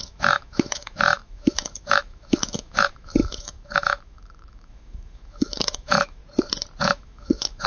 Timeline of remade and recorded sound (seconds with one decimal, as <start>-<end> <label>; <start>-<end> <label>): 0.0-6.2 remade; 6.2-6.8 recorded; 6.8-7.7 remade